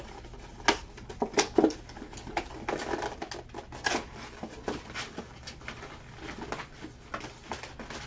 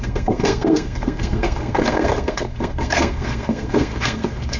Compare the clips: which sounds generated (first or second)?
second